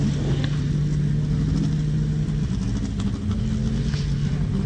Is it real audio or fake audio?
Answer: real